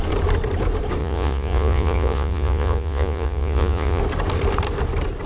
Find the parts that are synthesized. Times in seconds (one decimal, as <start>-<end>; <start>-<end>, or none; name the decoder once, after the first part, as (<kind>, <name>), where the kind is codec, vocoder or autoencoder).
1.0-4.0 (vocoder, Vocos)